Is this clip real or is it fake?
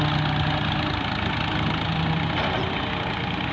real